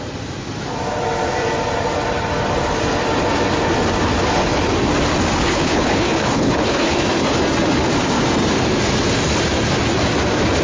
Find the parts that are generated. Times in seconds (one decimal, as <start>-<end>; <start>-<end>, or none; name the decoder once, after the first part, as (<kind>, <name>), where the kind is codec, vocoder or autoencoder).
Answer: 5.4-7.0 (codec, HILCodec)